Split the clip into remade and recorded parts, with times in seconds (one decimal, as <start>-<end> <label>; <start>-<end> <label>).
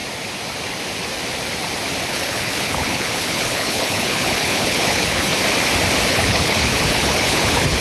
0.0-2.1 recorded; 2.1-5.3 remade; 5.3-6.1 recorded; 6.1-7.8 remade